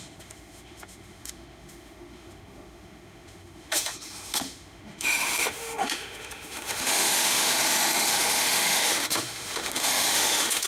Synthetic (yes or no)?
yes